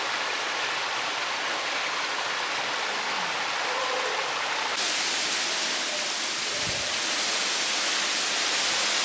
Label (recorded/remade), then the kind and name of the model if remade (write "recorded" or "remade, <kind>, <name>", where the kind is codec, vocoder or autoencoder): recorded